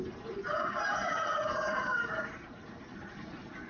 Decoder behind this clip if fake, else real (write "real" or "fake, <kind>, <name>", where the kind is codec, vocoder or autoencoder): real